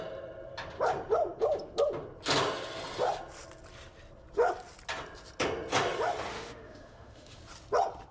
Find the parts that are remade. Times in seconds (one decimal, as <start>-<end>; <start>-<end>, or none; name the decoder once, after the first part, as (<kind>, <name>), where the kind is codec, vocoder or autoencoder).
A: 6.3-7.4 (autoencoder, DAC-VAE)